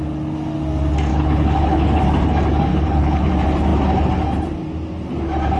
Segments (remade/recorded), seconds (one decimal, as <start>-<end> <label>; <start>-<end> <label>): 0.0-1.1 recorded; 1.1-2.0 remade; 2.0-2.7 recorded; 2.7-3.3 remade; 3.3-5.6 recorded

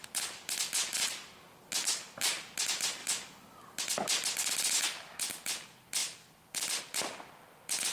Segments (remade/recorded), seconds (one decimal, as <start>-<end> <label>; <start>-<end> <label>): 0.0-6.0 recorded; 6.0-6.8 remade; 6.8-7.9 recorded

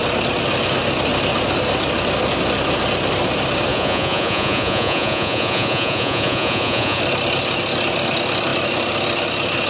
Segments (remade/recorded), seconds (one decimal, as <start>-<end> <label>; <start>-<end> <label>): 0.0-3.7 recorded; 3.7-7.0 remade; 7.0-9.7 recorded